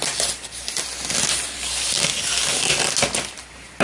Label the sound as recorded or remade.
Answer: recorded